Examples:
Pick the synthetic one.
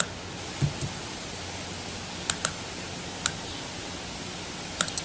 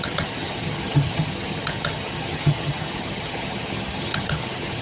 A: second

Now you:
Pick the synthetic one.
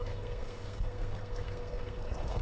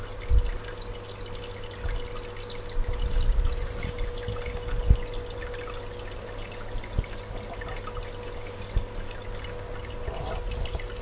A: first